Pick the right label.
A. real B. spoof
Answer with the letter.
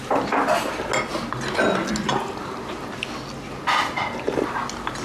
A